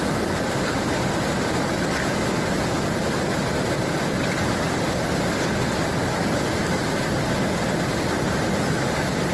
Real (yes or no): yes